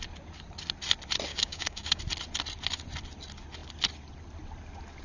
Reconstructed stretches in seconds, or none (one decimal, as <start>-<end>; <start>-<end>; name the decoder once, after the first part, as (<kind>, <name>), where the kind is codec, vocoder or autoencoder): 1.3-2.0 (codec, DAC)